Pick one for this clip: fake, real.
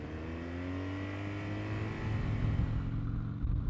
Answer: real